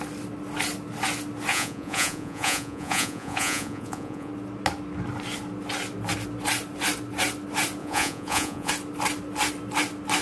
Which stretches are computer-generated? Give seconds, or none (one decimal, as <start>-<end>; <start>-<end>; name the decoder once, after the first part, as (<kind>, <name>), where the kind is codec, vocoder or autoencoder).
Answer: 1.5-4.3 (vocoder, Vocos); 7.8-8.7